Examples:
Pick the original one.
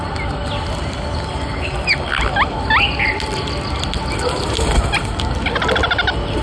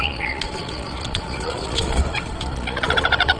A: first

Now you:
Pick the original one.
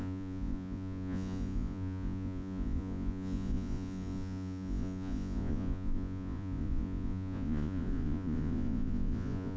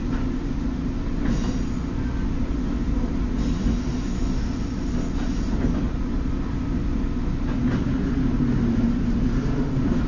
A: second